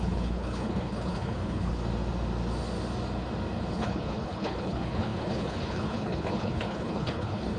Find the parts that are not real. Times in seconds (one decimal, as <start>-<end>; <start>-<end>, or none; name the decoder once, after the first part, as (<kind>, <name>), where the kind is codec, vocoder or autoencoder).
0.0-1.8 (codec, HILCodec); 3.7-7.6